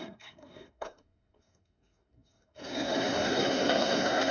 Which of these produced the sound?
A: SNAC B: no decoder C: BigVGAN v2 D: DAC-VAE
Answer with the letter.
A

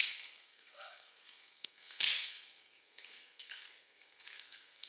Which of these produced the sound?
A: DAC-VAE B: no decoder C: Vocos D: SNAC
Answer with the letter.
D